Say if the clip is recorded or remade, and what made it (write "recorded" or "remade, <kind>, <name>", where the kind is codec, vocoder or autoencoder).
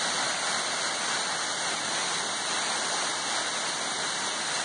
recorded